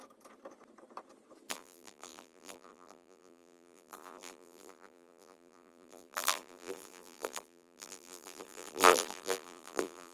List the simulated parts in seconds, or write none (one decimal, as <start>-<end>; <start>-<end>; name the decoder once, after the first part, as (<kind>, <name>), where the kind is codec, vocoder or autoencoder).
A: 1.5-10.1 (vocoder, BigVGAN v2)